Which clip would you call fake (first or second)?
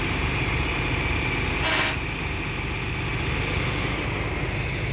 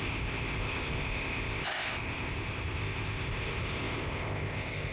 second